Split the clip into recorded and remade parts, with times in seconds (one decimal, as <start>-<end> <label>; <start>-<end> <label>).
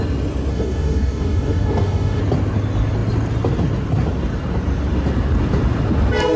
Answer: 0.0-0.5 recorded; 0.5-2.2 remade; 2.2-6.4 recorded